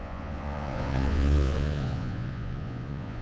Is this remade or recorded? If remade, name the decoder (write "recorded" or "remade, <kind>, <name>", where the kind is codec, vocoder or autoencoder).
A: remade, vocoder, Vocos